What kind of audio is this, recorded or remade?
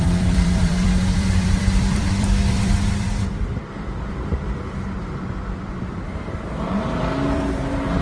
remade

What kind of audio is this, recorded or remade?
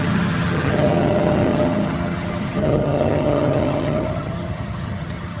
remade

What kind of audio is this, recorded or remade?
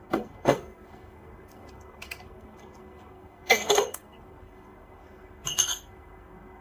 remade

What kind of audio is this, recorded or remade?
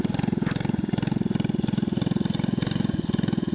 recorded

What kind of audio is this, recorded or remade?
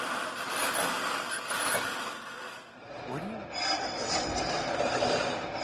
recorded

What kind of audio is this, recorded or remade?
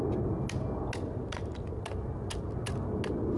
recorded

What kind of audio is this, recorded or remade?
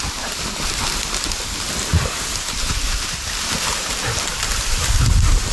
recorded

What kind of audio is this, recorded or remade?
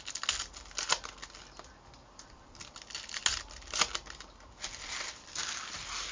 recorded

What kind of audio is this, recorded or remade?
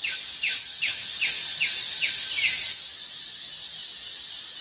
recorded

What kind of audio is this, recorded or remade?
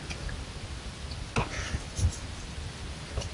recorded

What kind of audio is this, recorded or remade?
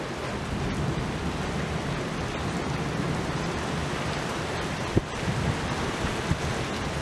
recorded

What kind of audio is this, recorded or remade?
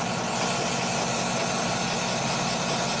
recorded